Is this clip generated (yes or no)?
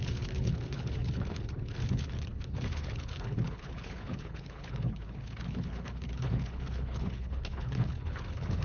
yes